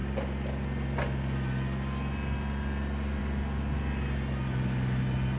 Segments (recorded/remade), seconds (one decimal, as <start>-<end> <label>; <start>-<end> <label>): 0.0-5.4 recorded